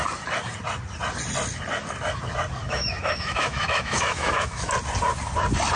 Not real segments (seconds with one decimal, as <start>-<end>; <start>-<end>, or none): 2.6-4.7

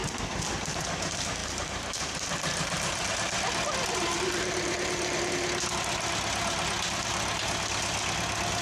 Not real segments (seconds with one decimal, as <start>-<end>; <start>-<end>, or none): 0.0-0.8; 1.4-5.3

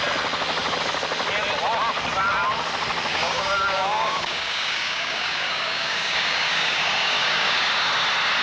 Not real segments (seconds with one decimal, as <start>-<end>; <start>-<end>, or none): 3.1-7.7

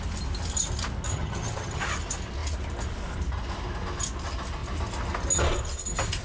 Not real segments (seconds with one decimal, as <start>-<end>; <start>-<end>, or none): 1.1-1.8

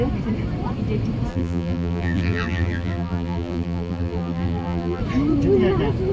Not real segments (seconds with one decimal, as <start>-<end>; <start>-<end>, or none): 1.3-5.0